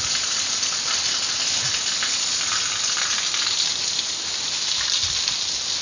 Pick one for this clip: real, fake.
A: real